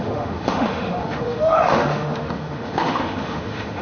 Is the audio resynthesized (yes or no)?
yes